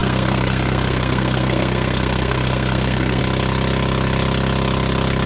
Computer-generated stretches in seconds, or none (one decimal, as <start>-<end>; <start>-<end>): 0.0-3.2